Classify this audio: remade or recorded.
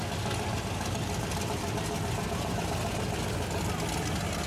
recorded